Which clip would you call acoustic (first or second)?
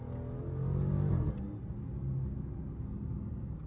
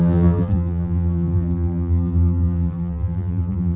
first